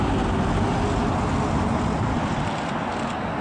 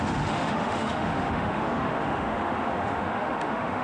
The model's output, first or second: second